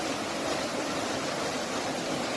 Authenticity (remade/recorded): recorded